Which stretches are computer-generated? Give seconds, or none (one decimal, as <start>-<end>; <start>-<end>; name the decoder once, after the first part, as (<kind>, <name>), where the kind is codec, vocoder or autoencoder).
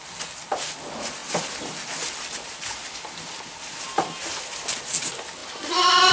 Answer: none